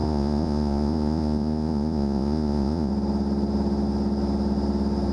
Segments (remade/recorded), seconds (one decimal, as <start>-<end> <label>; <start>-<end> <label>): 0.0-2.9 remade; 2.9-5.1 recorded